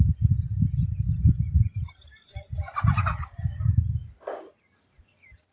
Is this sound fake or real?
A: real